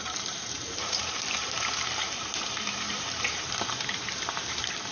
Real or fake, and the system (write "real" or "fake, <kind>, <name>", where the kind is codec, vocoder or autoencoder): fake, vocoder, BigVGAN v2